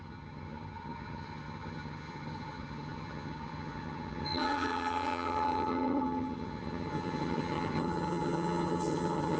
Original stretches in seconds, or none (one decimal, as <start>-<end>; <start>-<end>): none